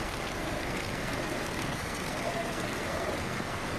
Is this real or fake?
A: fake